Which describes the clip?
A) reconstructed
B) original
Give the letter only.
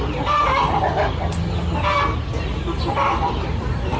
B